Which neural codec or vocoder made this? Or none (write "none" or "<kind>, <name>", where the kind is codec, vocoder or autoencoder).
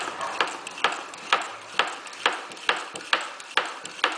none